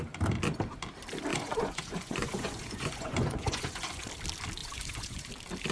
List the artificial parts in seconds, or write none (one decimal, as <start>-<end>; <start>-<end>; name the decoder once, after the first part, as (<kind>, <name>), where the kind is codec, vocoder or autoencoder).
1.3-4.1 (vocoder, Vocos); 4.6-5.3

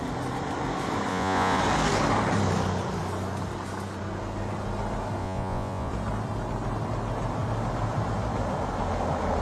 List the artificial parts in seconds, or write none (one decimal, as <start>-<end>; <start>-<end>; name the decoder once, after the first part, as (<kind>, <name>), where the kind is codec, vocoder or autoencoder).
1.1-1.6 (vocoder, Vocos); 5.2-5.9

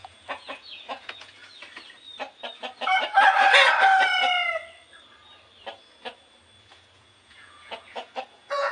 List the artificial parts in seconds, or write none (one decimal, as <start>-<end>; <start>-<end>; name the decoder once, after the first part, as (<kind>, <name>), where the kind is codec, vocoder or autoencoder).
0.0-1.4 (vocoder, Vocos); 6.6-8.7

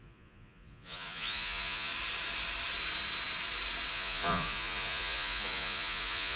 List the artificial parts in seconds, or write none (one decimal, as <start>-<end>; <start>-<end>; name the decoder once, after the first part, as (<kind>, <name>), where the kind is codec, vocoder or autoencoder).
0.0-1.9 (vocoder, Vocos); 3.9-6.4

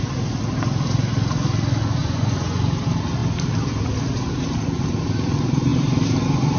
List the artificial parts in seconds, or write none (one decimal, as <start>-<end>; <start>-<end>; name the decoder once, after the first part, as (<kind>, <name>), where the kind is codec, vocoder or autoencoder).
2.0-2.6 (vocoder, Vocos)